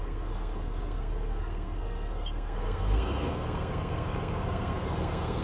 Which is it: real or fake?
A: fake